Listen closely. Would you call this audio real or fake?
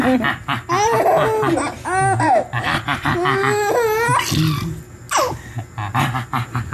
real